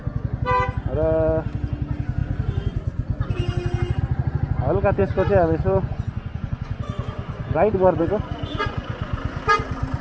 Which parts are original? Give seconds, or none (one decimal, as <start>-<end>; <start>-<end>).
0.0-5.0; 9.4-10.0